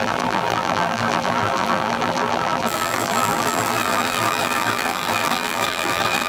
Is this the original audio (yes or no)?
no